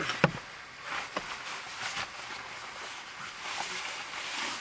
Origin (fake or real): real